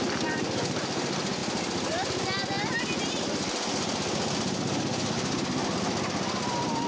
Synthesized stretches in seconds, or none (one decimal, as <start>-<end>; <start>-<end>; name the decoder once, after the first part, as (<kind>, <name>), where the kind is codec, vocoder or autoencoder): none